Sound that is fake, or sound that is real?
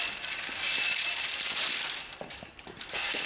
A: real